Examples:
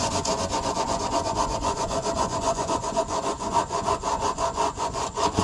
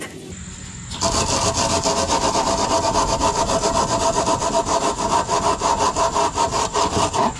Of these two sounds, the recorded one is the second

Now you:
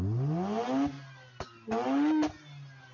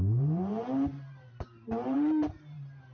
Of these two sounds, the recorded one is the first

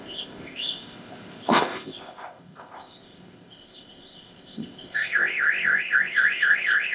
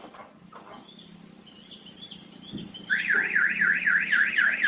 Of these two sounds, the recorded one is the second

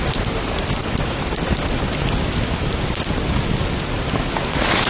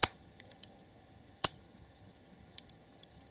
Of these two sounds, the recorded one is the first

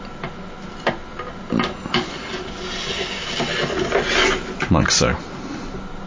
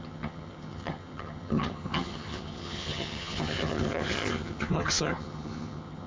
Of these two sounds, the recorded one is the first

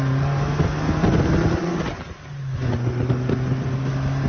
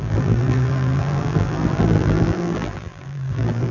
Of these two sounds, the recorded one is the first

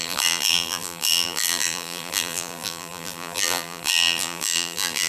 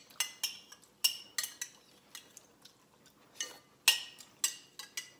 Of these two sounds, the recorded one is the second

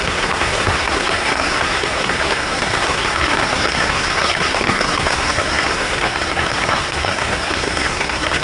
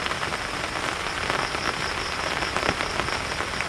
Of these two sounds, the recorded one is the second